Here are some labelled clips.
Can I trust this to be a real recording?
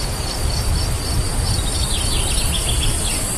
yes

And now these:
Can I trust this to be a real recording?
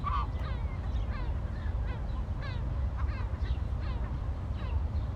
yes